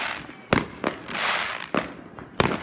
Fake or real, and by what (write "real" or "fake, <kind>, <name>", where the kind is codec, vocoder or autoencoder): real